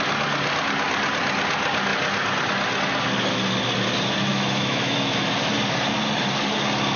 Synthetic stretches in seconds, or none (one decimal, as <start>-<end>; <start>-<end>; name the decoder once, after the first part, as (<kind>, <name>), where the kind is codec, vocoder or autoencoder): 4.3-5.5 (autoencoder, DAC-VAE)